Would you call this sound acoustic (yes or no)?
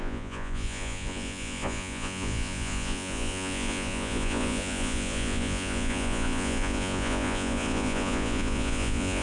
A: no